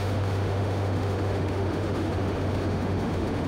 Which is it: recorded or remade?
remade